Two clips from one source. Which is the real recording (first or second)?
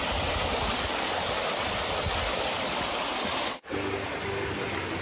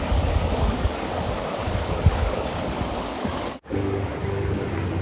first